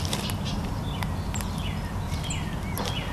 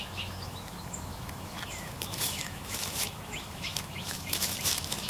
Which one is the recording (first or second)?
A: first